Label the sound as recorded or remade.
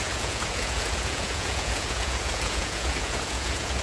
remade